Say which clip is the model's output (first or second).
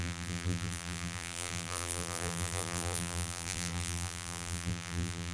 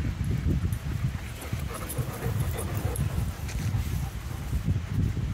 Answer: first